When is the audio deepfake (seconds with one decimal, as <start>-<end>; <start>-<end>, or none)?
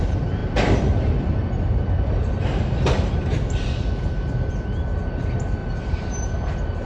0.4-4.5; 5.6-6.9